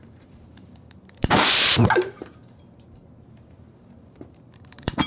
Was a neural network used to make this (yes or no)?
yes